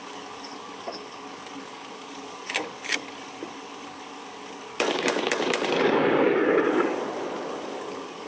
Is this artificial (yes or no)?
yes